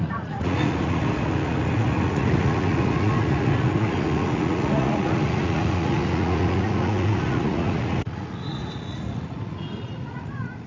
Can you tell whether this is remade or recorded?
remade